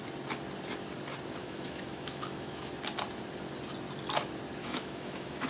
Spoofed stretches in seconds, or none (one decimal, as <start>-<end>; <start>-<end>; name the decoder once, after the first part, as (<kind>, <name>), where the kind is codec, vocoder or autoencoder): 1.4-2.7 (autoencoder, DAC-VAE); 4.6-5.5